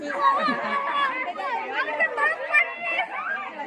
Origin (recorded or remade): recorded